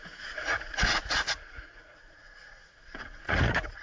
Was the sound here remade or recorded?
remade